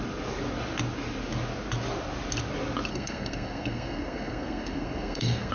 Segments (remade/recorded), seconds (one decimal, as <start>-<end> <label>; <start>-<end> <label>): 0.0-2.9 recorded; 2.9-5.5 remade